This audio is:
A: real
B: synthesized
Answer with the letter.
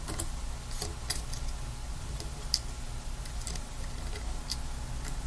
A